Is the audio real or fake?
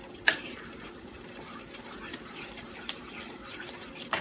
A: fake